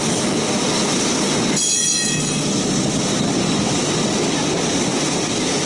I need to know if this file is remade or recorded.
recorded